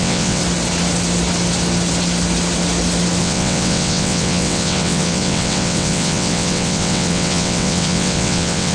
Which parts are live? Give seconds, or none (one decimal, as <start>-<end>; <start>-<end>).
0.4-3.2